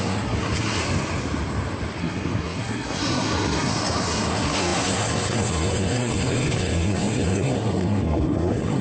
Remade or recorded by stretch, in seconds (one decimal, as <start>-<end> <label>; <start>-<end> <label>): 0.0-0.8 remade; 0.8-2.0 recorded; 2.0-8.8 remade